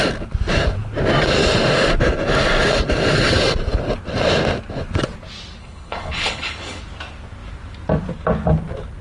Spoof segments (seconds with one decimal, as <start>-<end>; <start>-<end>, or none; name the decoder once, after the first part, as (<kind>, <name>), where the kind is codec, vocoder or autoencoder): 5.6-6.8 (codec, HILCodec)

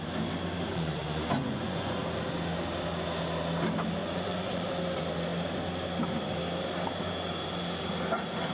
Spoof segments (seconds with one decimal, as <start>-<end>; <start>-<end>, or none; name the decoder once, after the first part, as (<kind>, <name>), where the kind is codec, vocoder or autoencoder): 0.7-2.0 (vocoder, Vocos); 4.0-4.7

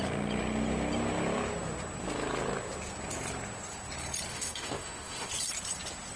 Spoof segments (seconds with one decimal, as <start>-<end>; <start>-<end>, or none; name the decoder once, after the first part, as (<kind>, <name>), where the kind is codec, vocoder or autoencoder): 4.3-5.3 (autoencoder, DAC-VAE)

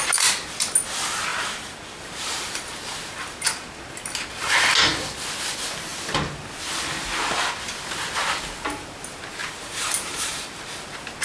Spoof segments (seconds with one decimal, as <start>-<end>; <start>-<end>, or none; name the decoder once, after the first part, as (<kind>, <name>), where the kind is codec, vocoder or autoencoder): 1.3-3.4 (vocoder, BigVGAN v2); 9.4-10.6

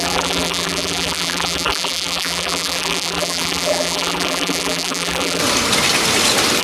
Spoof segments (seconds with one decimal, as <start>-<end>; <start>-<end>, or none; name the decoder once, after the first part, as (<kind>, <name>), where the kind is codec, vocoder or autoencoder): 0.0-5.4 (vocoder, BigVGAN v2)

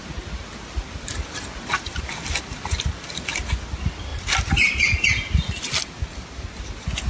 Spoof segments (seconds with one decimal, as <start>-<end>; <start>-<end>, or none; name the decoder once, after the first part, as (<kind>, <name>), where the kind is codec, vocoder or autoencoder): none

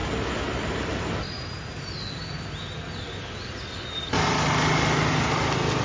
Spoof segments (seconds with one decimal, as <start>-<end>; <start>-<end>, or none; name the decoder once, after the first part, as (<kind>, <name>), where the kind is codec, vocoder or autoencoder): none

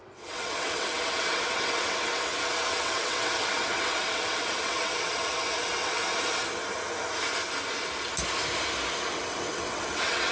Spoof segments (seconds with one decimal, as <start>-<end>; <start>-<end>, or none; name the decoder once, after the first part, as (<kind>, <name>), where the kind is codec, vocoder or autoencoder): 0.0-6.0 (vocoder, WaveNeXt); 9.1-10.3